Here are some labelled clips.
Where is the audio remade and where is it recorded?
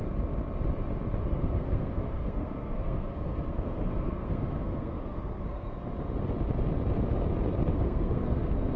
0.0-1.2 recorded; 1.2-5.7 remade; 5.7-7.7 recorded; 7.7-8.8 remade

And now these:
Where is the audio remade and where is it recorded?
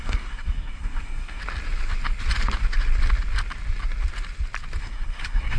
0.0-1.4 remade; 1.4-4.8 recorded; 4.8-5.6 remade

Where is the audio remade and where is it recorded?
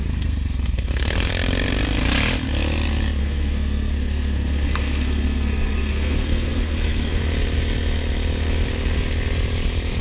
0.0-1.3 remade; 1.3-3.2 recorded; 3.2-7.2 remade; 7.2-10.0 recorded